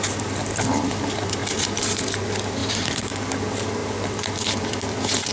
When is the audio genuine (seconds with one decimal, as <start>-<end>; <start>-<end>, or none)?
0.0-1.4; 2.0-2.6; 3.1-5.3